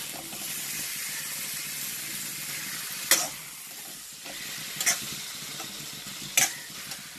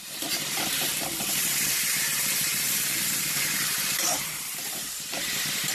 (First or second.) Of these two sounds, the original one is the first